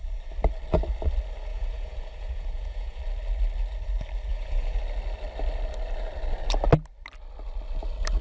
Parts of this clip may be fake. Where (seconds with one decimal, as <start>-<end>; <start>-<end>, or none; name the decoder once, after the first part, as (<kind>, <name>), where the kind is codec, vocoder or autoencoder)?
1.5-3.0 (vocoder, Vocos); 4.3-4.8